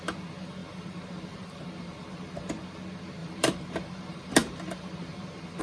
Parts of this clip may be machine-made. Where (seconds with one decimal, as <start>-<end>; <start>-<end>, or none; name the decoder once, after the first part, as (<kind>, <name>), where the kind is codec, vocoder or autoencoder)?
0.6-2.1 (vocoder, BigVGAN v2); 3.2-5.6